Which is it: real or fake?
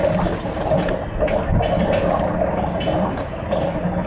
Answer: real